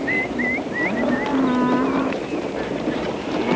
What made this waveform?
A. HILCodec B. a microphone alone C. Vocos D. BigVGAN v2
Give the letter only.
B